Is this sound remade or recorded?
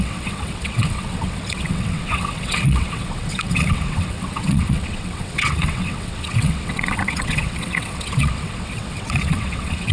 remade